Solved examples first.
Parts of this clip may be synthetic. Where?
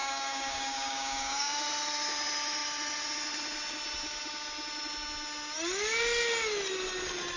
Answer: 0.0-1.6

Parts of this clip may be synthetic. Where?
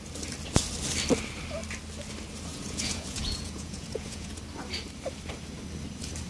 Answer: 2.5-4.4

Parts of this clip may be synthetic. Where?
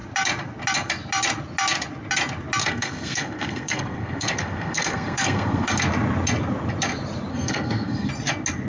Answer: 2.6-5.8; 7.3-8.1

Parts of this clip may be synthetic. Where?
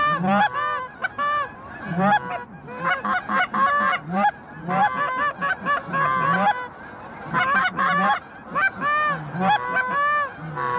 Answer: none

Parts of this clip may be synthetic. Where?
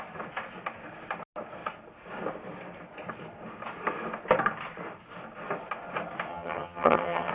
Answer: 6.3-7.3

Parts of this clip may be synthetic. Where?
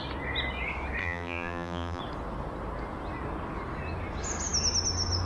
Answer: 1.0-2.0